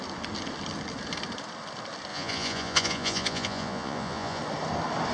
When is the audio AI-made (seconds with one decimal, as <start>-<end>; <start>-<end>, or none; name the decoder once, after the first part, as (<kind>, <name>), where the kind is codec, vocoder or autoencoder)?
2.1-4.4 (vocoder, Vocos)